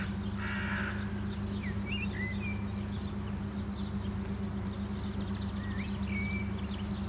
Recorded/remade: recorded